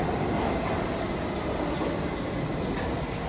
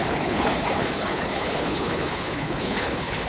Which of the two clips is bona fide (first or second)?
first